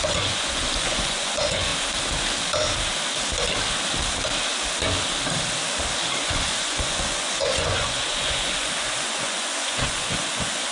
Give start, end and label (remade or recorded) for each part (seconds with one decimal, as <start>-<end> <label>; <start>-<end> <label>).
0.0-1.7 remade; 1.7-6.2 recorded; 6.2-10.7 remade